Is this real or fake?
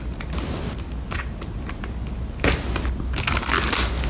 real